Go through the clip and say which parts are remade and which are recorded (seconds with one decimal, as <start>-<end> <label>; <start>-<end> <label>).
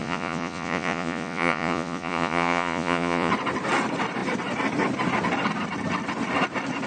0.0-3.3 remade; 3.3-6.9 recorded